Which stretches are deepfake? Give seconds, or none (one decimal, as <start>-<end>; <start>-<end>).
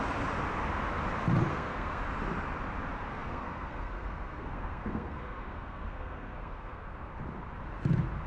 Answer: 1.5-2.0; 3.1-7.1